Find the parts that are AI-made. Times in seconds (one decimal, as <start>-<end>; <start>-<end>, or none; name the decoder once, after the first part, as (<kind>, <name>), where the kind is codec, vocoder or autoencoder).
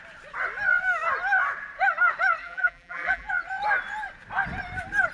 2.4-3.3 (vocoder, BigVGAN v2)